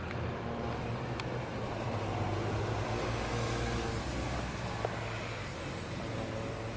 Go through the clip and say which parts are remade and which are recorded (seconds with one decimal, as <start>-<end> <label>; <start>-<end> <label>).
0.0-6.8 recorded